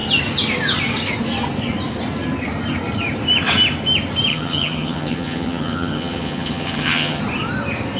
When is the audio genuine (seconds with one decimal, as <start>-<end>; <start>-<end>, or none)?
0.0-4.3; 7.2-8.0